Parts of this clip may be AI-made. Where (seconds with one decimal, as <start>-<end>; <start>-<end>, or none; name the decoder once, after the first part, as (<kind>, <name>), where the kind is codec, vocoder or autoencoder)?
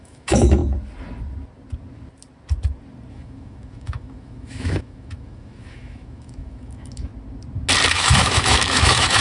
0.0-0.6 (autoencoder, DAC-VAE); 3.1-7.1; 7.9-9.2